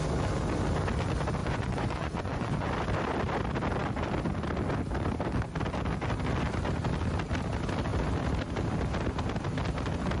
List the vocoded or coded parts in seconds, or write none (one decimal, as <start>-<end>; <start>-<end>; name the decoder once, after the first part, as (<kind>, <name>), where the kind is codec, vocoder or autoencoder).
1.4-2.7 (vocoder, Vocos)